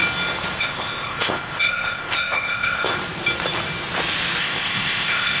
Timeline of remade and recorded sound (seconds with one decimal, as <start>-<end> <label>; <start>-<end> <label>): 0.0-0.6 recorded; 0.6-3.0 remade; 3.0-4.4 recorded; 4.4-5.4 remade